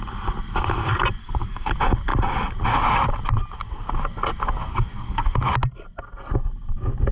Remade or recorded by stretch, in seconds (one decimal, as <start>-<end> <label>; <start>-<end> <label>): 0.0-1.2 recorded; 1.2-1.7 remade; 1.7-4.7 recorded; 4.7-5.4 remade; 5.4-7.1 recorded